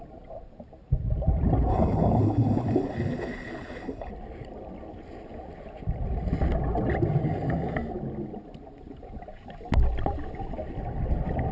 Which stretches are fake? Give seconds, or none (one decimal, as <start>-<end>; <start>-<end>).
1.7-4.1